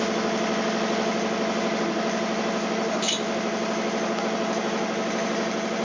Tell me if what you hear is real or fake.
real